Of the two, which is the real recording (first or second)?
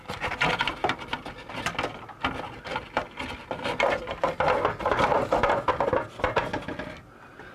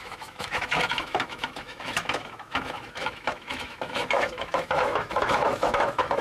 first